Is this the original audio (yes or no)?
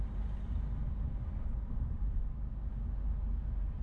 yes